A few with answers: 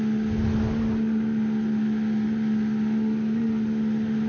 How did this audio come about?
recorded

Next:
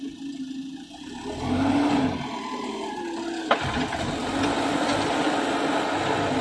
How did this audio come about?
recorded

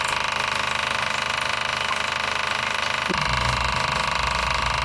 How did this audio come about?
recorded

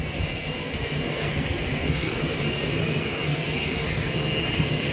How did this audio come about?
remade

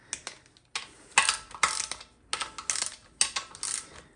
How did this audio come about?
recorded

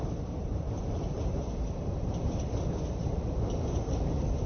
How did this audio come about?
remade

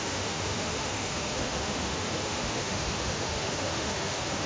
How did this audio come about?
remade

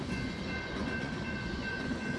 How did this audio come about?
remade